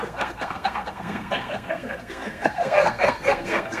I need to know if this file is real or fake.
fake